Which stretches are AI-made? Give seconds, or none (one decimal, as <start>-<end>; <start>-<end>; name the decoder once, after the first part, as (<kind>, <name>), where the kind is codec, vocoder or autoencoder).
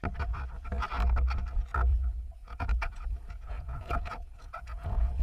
1.9-5.2 (vocoder, Vocos)